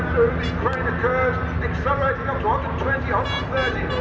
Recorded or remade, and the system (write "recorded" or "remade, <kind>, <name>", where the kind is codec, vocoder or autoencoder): recorded